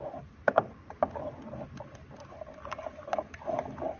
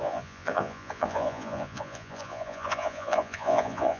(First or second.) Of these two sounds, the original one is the first